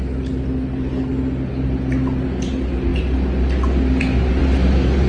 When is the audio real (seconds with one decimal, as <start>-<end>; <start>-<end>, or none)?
0.0-5.1